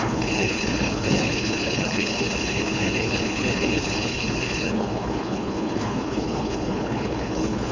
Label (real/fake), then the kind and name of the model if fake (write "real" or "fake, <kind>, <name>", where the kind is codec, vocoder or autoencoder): fake, codec, HILCodec